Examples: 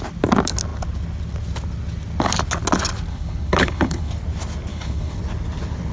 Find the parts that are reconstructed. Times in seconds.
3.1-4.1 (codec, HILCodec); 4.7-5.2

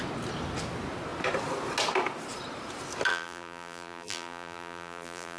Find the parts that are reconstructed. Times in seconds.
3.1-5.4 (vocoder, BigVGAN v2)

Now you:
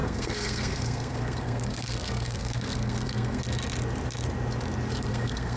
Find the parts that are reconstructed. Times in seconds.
0.0-3.4 (codec, SNAC); 5.1-5.6

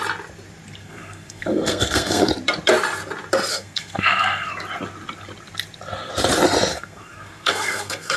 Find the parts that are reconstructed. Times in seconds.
0.8-2.3 (codec, SNAC); 3.5-4.5; 6.7-8.2

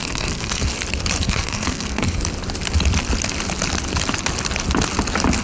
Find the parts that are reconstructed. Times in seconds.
0.0-0.7 (codec, SNAC); 1.2-2.2